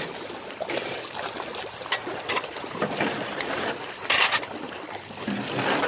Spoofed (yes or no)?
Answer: yes